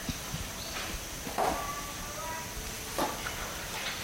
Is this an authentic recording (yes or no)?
yes